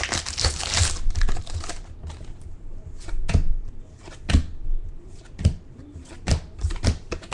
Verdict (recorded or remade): recorded